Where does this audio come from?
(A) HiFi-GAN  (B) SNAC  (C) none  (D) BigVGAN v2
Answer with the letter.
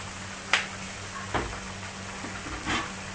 C